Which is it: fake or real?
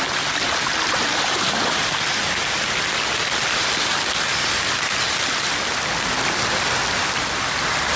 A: real